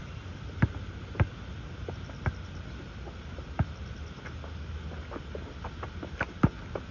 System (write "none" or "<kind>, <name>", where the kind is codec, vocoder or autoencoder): none